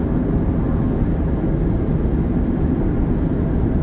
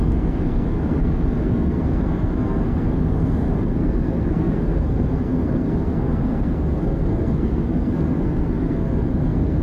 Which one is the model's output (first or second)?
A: second